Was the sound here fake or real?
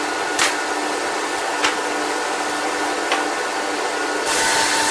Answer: real